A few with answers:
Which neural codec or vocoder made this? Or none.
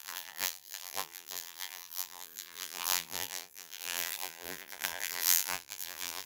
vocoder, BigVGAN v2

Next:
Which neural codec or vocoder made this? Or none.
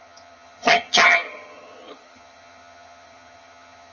vocoder, HiFi-GAN